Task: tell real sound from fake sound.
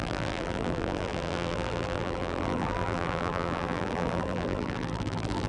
fake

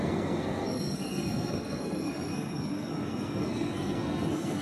fake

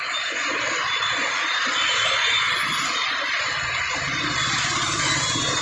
real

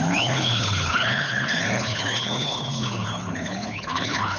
fake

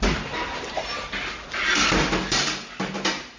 real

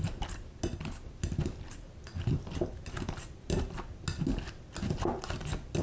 real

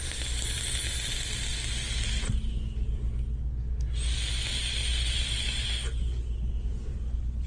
real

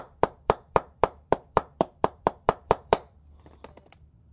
fake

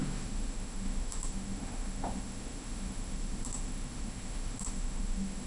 fake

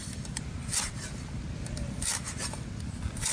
real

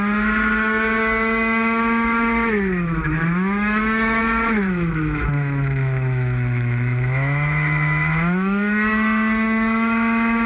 fake